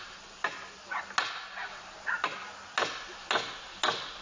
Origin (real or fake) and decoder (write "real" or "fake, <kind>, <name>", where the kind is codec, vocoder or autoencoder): real